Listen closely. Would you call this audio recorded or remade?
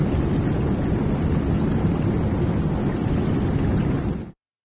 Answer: recorded